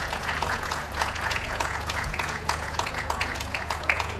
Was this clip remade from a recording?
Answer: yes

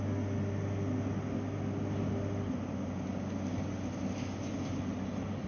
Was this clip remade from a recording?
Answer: no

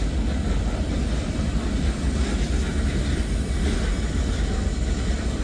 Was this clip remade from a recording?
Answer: no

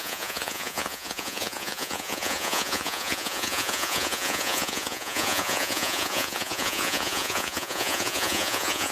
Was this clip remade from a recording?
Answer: yes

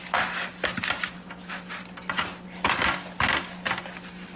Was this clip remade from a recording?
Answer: no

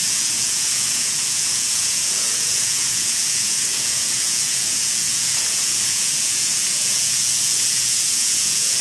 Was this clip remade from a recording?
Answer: yes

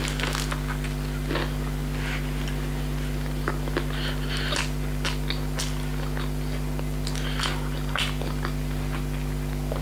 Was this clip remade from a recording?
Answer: no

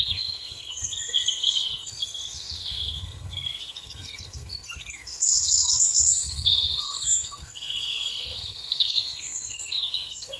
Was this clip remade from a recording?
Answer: yes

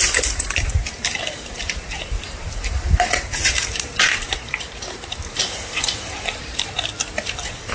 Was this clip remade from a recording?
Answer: yes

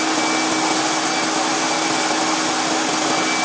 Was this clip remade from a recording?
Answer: no